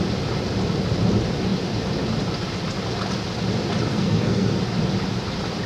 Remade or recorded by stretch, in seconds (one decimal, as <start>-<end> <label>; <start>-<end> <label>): 0.0-3.9 recorded; 3.9-4.6 remade; 4.6-5.7 recorded